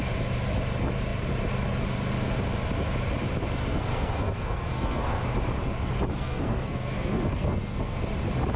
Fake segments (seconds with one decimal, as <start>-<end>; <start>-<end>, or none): 3.7-5.2; 6.1-8.0